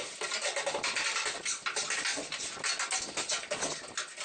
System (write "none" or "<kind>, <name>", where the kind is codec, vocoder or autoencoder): none